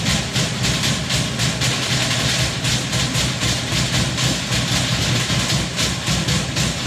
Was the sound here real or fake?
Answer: real